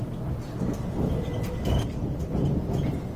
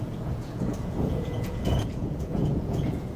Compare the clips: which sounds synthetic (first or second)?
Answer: second